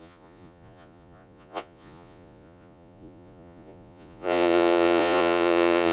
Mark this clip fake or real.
fake